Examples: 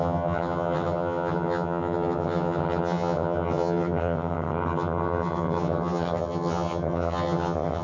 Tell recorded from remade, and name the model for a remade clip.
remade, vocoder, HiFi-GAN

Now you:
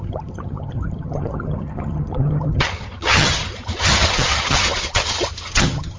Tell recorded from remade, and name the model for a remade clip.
remade, vocoder, HiFi-GAN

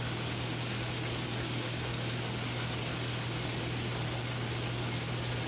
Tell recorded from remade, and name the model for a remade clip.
recorded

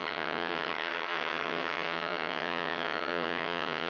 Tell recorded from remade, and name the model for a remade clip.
remade, vocoder, HiFi-GAN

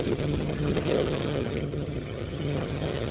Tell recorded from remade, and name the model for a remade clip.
remade, vocoder, HiFi-GAN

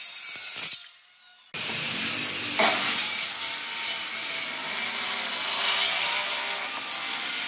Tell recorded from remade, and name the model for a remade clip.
recorded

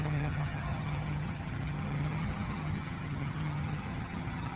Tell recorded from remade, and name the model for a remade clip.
remade, vocoder, HiFi-GAN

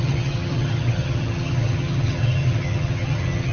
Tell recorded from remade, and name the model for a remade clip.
remade, vocoder, HiFi-GAN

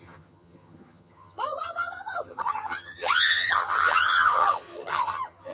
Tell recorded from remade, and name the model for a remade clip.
remade, vocoder, HiFi-GAN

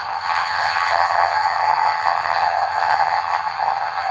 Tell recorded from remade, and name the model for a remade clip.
remade, vocoder, HiFi-GAN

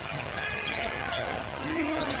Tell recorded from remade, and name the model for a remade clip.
remade, vocoder, HiFi-GAN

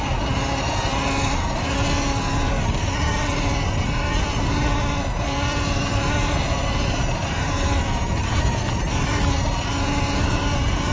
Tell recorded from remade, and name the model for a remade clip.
recorded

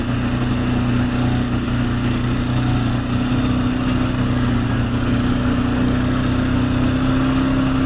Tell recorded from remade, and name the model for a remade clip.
recorded